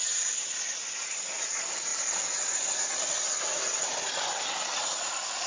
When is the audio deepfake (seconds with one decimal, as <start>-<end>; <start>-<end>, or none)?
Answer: none